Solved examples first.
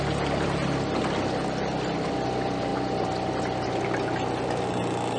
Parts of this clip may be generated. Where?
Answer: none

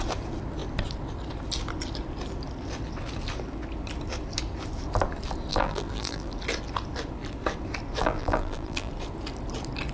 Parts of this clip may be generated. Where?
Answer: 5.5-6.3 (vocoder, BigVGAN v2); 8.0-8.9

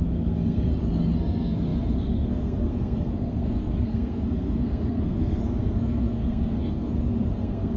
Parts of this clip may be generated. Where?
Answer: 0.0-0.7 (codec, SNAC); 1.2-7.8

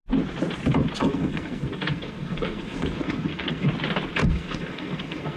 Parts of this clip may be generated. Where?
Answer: 1.0-3.7 (codec, SNAC); 4.2-5.4

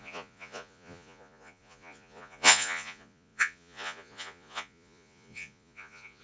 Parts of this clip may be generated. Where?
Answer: 0.0-6.2 (vocoder, Vocos)